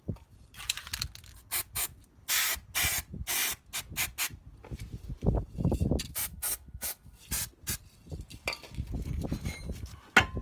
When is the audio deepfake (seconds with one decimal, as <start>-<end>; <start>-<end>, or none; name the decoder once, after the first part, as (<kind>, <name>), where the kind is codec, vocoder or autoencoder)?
6.3-7.2 (codec, SNAC)

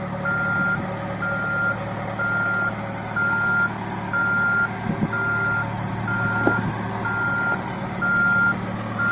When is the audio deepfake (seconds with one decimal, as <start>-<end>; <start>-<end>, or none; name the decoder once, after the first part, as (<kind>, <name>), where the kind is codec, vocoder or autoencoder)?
none

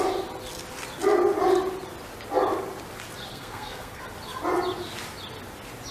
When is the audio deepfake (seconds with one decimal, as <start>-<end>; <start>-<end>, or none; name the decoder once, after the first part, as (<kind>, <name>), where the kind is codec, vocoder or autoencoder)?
3.3-4.0 (codec, SNAC)

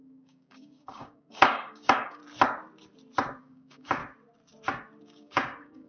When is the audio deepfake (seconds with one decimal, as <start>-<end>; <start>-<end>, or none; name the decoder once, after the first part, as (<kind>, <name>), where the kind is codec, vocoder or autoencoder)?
0.0-2.2 (codec, DAC); 3.4-4.0; 5.0-5.9

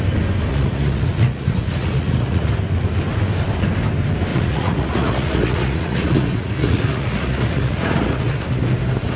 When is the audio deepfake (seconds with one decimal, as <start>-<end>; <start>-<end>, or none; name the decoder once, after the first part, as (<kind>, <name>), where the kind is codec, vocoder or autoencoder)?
0.5-2.5 (vocoder, Vocos); 4.3-8.6

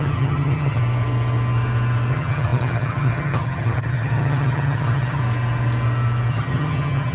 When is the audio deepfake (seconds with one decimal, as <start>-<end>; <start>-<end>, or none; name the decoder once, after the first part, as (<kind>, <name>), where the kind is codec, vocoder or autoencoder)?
0.0-0.8 (vocoder, HiFi-GAN); 2.1-5.2; 6.3-7.1